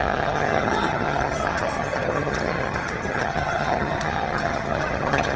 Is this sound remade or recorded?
remade